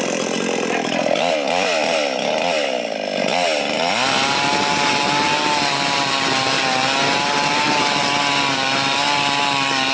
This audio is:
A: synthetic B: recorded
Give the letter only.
B